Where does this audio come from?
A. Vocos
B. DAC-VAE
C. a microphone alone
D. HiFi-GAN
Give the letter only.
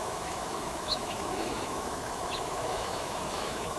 B